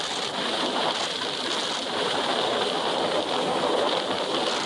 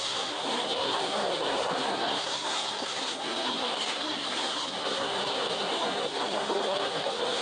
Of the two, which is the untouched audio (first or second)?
first